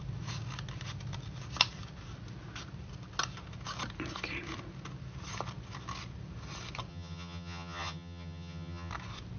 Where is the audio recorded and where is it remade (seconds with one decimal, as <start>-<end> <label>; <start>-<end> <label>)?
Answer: 0.0-6.9 recorded; 6.9-8.9 remade; 8.9-9.4 recorded